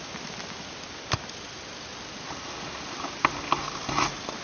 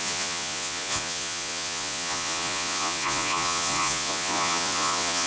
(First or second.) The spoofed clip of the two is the second